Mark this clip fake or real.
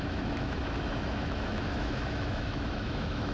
fake